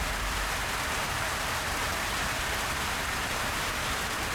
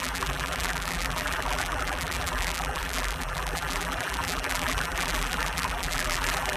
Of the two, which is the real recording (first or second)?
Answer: first